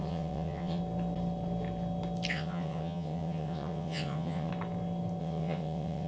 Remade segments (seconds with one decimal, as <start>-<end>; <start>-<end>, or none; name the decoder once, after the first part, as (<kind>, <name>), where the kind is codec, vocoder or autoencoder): 0.0-0.8 (vocoder, WaveNeXt); 2.3-4.5; 5.2-6.1